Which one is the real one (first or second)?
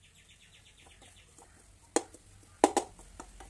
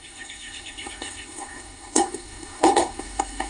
first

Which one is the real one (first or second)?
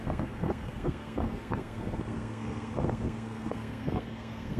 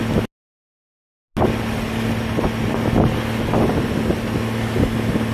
second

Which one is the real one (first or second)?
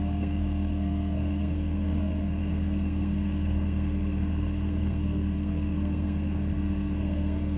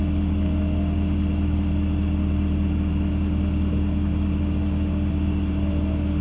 second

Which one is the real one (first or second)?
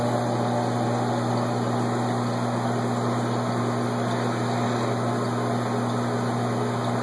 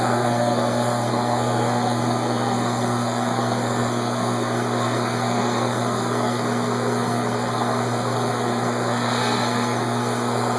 first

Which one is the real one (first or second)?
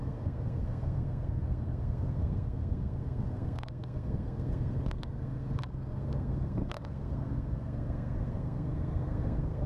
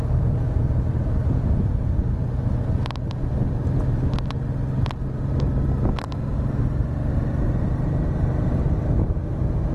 second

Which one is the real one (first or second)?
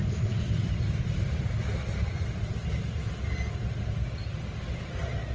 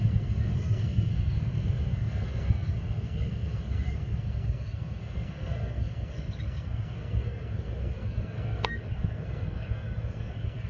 first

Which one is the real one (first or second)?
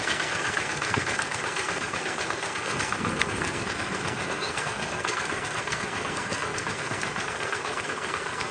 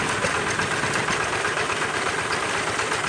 second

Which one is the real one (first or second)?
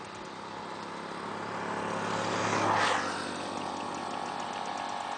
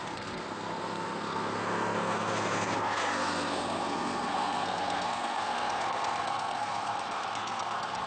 first